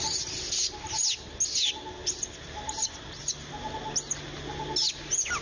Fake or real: real